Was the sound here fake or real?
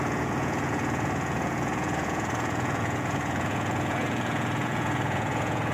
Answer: fake